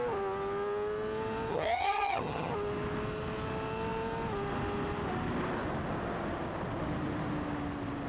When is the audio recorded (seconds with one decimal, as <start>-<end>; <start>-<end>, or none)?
0.0-1.5; 2.5-8.1